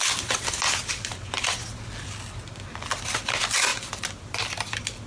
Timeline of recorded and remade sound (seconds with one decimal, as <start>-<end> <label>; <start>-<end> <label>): 0.0-5.1 recorded